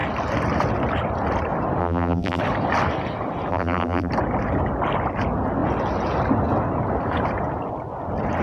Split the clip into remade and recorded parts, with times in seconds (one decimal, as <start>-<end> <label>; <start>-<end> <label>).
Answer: 0.0-1.8 recorded; 1.8-2.4 remade; 2.4-3.5 recorded; 3.5-4.1 remade; 4.1-8.4 recorded